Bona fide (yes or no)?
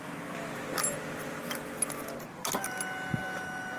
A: yes